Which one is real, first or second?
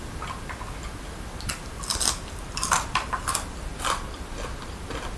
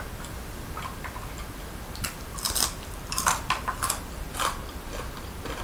first